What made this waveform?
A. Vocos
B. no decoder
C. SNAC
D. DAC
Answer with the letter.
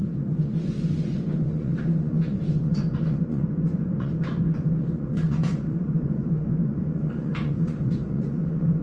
A